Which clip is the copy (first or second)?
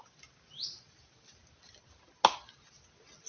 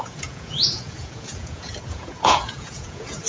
second